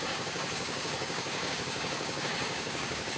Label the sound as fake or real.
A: fake